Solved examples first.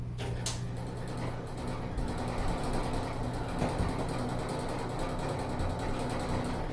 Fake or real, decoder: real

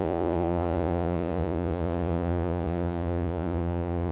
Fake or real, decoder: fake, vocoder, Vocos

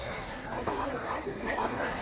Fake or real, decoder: fake, codec, SNAC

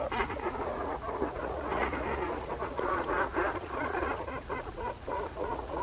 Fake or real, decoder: fake, vocoder, Vocos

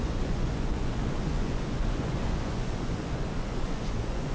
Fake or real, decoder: fake, vocoder, Vocos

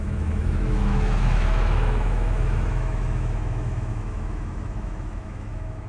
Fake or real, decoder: fake, autoencoder, DAC-VAE